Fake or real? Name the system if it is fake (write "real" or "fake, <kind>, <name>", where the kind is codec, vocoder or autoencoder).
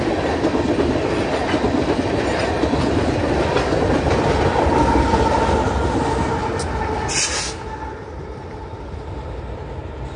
real